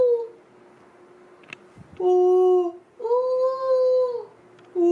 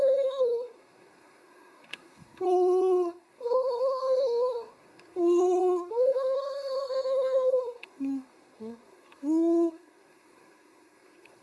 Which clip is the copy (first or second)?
second